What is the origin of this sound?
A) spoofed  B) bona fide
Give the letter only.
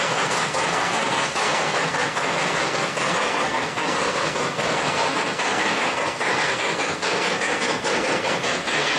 A